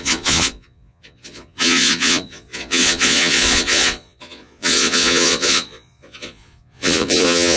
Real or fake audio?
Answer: fake